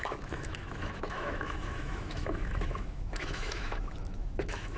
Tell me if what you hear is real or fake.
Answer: fake